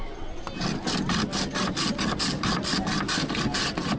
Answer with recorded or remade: recorded